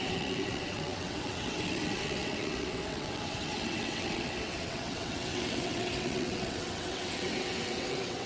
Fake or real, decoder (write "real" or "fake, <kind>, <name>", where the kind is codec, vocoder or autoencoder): fake, vocoder, WaveNeXt